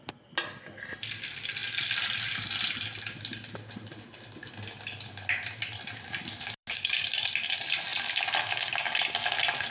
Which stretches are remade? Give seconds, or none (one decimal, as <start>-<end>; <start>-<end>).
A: none